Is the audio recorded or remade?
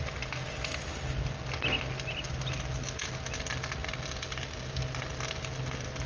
recorded